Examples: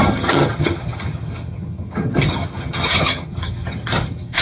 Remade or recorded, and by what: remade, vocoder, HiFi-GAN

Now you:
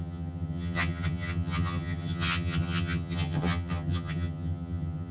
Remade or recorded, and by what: remade, vocoder, HiFi-GAN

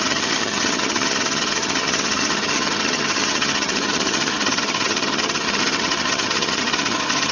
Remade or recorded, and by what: remade, vocoder, HiFi-GAN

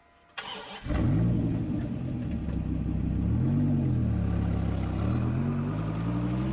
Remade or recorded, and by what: recorded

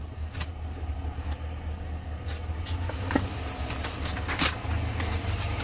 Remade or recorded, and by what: recorded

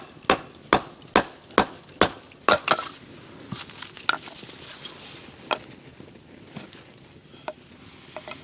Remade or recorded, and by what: recorded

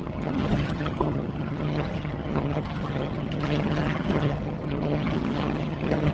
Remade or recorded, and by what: remade, vocoder, HiFi-GAN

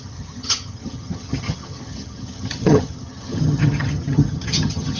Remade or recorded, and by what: remade, vocoder, HiFi-GAN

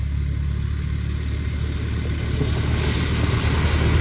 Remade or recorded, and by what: recorded